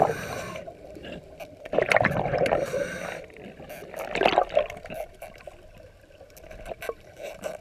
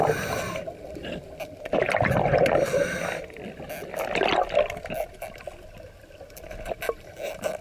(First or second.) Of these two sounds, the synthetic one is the first